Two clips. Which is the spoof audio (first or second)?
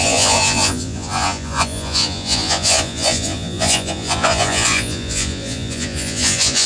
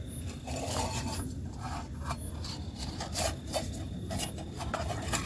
first